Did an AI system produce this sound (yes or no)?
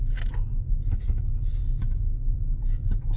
no